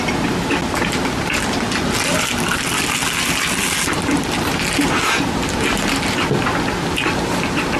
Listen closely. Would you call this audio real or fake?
real